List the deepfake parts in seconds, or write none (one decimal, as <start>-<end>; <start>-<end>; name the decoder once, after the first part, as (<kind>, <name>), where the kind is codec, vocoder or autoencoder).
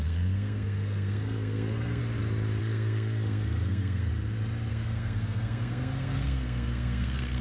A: 0.0-2.0 (codec, SNAC); 2.6-4.1; 4.7-7.4